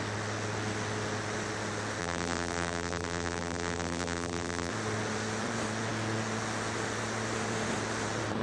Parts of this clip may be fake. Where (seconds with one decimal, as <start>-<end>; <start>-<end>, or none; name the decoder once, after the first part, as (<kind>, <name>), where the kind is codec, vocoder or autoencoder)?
2.0-4.7 (vocoder, BigVGAN v2)